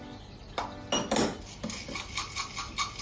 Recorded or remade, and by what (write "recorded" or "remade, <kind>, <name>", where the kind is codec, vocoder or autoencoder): recorded